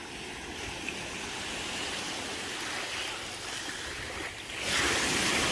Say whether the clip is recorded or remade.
recorded